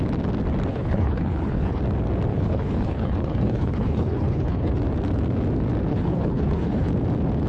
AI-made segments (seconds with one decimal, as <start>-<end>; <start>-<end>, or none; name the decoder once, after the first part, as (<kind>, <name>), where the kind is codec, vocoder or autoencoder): 0.7-1.8 (codec, HILCodec); 2.3-4.7; 5.9-6.9